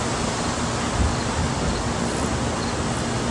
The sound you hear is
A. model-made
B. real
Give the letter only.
B